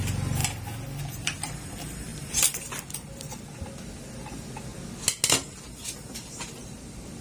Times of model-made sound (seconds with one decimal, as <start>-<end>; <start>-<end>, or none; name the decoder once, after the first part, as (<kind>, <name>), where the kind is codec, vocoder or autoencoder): 0.0-0.4 (vocoder, BigVGAN v2); 1.0-4.7; 6.3-7.2